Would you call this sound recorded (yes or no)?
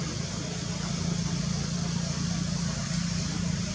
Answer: yes